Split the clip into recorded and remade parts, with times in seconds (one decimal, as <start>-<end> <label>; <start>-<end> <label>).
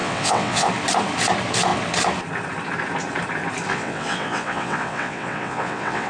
0.0-0.7 remade; 0.7-3.7 recorded; 3.7-6.1 remade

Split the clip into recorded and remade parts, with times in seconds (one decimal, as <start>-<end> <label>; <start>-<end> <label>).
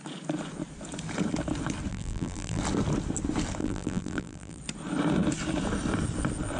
0.0-1.9 recorded; 1.9-2.6 remade; 2.6-3.6 recorded; 3.6-4.6 remade; 4.6-6.6 recorded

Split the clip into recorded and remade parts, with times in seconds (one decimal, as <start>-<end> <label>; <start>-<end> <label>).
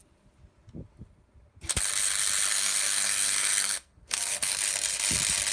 0.0-2.5 recorded; 2.5-4.5 remade; 4.5-5.5 recorded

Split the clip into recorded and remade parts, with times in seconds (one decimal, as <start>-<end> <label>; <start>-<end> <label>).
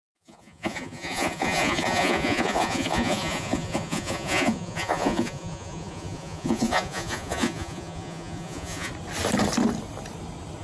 0.0-8.9 remade; 8.9-10.6 recorded